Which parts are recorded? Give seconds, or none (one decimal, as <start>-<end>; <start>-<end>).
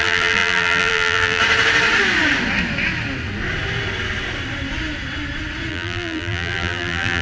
1.4-5.7